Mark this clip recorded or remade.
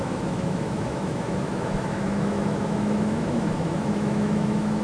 remade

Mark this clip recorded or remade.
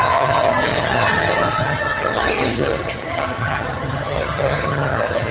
remade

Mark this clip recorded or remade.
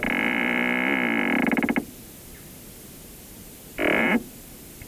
recorded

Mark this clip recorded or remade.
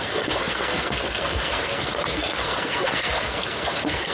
remade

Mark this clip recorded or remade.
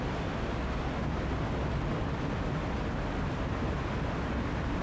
recorded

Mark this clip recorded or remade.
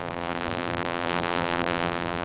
remade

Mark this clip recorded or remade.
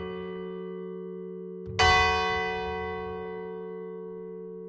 recorded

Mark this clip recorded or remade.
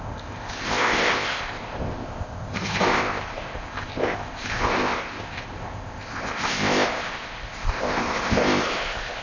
remade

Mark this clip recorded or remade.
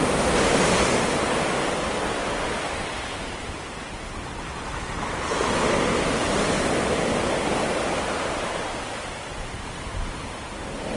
recorded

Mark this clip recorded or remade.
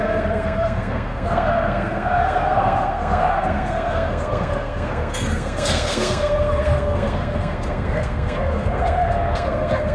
remade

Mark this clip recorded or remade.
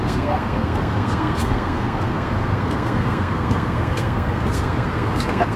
remade